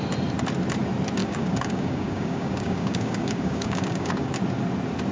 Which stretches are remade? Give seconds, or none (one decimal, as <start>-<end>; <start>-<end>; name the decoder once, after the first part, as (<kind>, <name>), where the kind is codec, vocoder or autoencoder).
1.2-4.3 (codec, DAC)